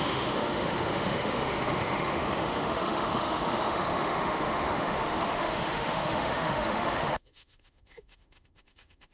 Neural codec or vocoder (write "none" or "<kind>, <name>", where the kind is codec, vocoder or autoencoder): autoencoder, DAC-VAE